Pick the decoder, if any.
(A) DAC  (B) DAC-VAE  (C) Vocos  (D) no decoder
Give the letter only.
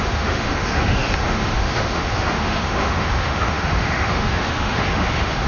B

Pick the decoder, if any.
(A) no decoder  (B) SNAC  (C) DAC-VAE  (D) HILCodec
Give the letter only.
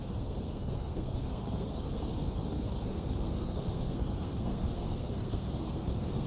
B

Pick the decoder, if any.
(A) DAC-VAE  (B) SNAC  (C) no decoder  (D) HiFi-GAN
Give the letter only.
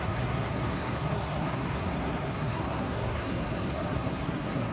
B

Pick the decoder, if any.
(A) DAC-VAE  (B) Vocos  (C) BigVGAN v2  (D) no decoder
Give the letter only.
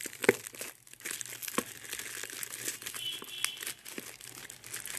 D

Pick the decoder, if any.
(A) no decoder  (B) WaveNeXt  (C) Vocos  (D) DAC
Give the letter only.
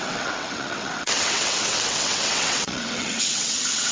B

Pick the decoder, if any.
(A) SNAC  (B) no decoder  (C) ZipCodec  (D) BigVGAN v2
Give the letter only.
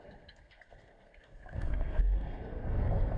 A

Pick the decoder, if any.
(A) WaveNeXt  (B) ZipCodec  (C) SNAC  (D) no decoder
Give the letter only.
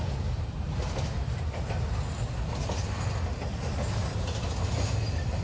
D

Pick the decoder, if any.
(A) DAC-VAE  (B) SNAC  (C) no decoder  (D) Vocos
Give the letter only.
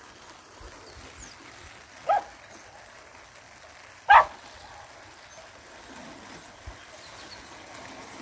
C